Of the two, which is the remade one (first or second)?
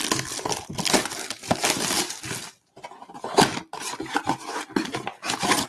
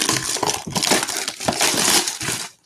second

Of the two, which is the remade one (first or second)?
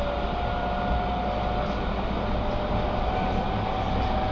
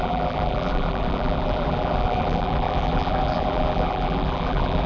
second